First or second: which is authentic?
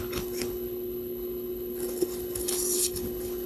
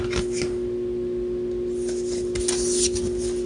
second